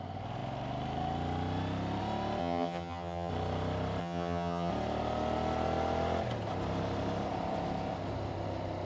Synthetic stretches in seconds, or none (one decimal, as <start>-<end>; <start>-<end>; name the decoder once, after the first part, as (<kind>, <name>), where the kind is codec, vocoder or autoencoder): 2.4-3.3 (vocoder, HiFi-GAN); 4.0-4.7